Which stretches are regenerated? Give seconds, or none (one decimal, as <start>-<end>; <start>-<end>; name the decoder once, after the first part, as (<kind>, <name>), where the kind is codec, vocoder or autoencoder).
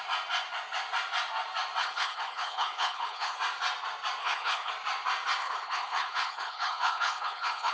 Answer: 1.8-3.4 (codec, HILCodec); 4.2-4.7; 5.4-7.7